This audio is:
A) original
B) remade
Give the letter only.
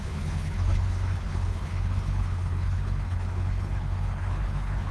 B